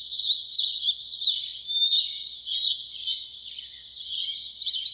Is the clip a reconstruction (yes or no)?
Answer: no